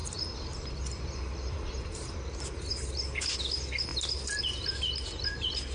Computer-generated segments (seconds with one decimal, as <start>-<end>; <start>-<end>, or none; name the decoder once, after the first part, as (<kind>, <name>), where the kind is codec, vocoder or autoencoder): none